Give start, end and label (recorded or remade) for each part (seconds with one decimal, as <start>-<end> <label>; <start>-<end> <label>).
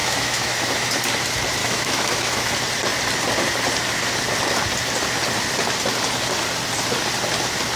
0.0-0.9 remade; 0.9-1.6 recorded; 1.6-2.5 remade; 2.5-7.8 recorded